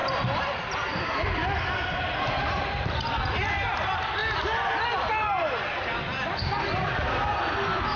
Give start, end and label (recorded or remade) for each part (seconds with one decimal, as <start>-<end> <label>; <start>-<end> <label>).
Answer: 0.0-4.2 recorded; 4.2-5.1 remade; 5.1-8.0 recorded